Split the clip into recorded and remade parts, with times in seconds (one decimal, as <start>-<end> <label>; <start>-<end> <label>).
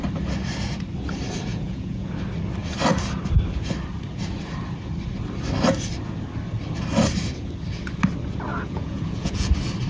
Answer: 0.0-1.5 recorded; 1.5-2.1 remade; 2.1-8.5 recorded; 8.5-9.5 remade; 9.5-9.9 recorded